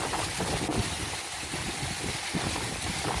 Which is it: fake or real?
real